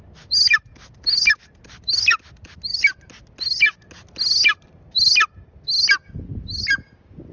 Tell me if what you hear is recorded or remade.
recorded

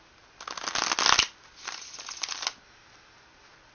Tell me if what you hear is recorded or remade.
recorded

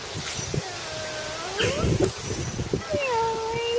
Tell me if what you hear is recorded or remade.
recorded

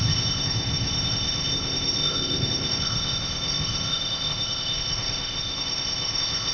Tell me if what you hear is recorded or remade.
remade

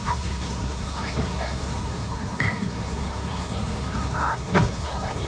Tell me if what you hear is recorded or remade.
remade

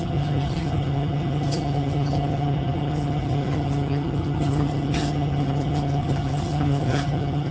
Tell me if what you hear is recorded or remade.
remade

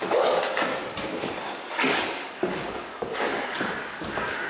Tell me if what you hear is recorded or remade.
remade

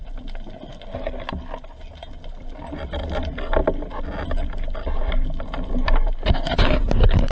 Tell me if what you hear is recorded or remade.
recorded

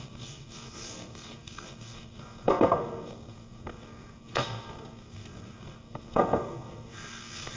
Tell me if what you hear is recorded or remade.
remade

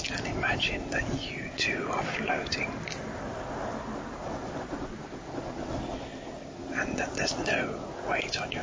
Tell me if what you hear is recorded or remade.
recorded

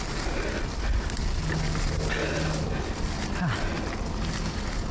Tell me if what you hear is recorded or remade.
recorded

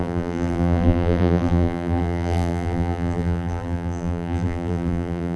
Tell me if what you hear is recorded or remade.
remade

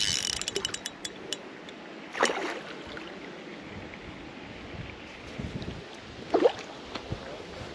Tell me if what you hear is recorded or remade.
recorded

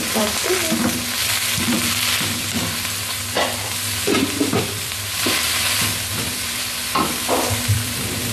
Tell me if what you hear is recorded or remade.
remade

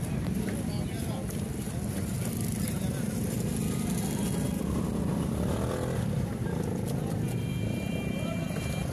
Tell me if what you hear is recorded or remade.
remade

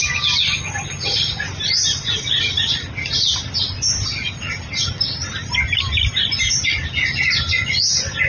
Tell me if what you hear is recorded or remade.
recorded